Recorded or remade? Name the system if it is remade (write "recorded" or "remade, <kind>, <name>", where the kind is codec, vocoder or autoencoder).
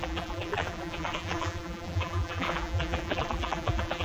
remade, vocoder, BigVGAN v2